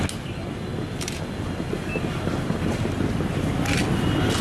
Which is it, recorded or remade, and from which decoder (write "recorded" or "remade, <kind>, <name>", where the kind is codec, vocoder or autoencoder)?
recorded